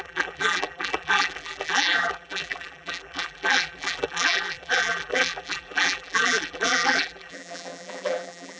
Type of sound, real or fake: fake